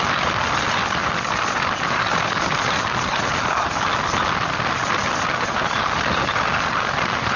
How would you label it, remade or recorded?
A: recorded